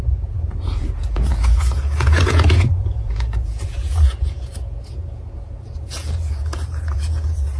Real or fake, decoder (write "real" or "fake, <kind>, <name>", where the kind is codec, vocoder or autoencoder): fake, vocoder, Vocos